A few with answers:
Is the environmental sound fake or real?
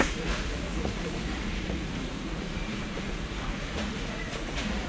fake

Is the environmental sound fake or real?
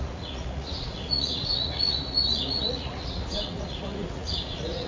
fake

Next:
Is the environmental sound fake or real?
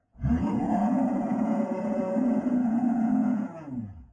fake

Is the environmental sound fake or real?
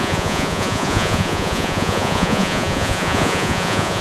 fake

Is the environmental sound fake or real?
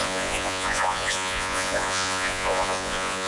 fake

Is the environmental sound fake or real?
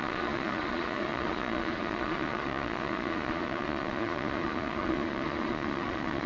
fake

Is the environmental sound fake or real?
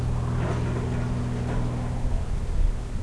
real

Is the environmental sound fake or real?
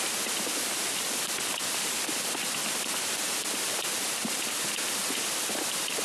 real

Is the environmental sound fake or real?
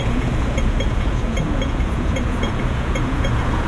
fake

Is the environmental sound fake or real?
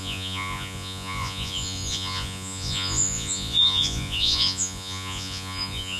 fake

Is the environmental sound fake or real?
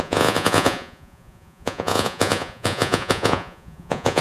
fake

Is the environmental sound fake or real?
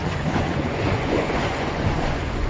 fake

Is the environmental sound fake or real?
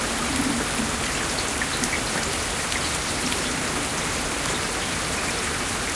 real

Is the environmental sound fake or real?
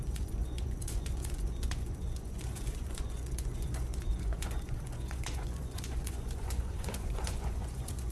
fake